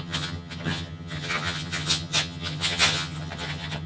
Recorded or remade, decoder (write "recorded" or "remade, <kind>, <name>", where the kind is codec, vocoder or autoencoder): remade, vocoder, HiFi-GAN